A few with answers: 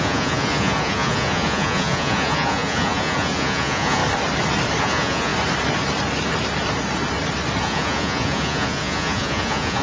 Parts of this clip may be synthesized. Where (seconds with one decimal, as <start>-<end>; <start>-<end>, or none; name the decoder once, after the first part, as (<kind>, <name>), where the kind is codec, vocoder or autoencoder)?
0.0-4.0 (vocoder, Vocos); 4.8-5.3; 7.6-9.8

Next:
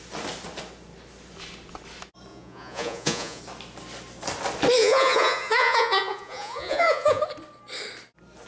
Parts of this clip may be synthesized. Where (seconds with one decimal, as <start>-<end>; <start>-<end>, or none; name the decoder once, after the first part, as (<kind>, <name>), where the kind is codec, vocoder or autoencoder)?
2.3-3.4 (vocoder, Vocos); 4.8-7.2

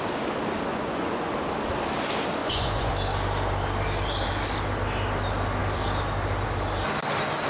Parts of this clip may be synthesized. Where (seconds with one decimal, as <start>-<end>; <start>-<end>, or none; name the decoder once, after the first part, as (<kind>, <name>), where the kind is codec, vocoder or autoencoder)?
0.7-1.3 (vocoder, Vocos); 2.4-2.9

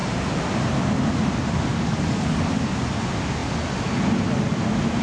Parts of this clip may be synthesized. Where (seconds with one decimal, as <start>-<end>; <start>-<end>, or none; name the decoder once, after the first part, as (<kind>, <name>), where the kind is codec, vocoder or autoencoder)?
1.7-2.5 (codec, DAC)

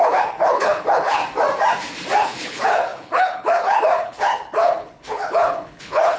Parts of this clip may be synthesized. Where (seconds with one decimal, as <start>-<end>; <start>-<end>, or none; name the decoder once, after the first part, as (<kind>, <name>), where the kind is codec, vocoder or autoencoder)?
0.0-1.2 (codec, HILCodec); 2.2-6.2

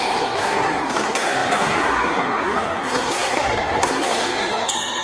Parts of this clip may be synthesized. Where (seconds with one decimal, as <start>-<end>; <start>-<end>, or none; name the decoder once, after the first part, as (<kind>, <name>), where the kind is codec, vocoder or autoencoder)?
0.0-5.0 (codec, SNAC)

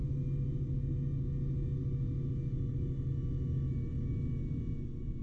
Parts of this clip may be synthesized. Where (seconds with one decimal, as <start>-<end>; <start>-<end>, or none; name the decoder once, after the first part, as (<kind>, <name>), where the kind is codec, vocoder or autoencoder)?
none